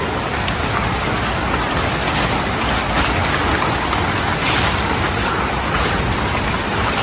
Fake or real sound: real